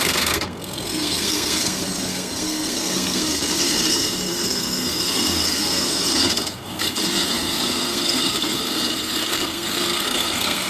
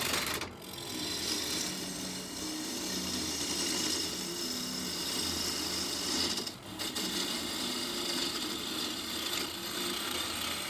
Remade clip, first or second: first